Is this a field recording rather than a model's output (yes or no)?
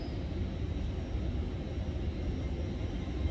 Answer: yes